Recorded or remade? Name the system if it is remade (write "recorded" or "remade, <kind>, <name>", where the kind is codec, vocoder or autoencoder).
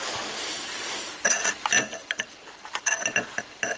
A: recorded